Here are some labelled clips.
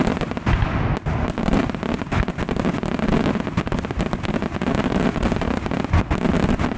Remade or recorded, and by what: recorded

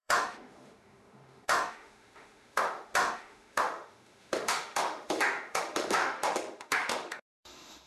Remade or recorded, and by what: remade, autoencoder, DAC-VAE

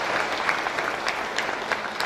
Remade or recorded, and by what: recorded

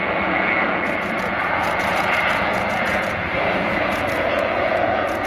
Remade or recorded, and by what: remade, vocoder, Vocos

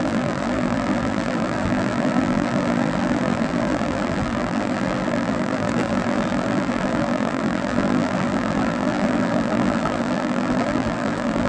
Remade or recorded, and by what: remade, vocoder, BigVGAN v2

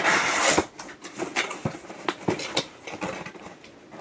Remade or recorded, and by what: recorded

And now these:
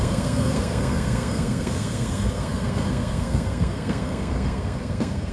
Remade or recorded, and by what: remade, codec, SNAC